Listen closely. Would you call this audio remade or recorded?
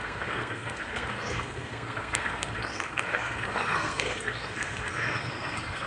remade